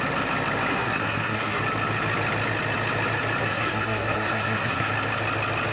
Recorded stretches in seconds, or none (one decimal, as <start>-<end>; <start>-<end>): 0.0-0.7; 1.6-3.4; 4.9-5.7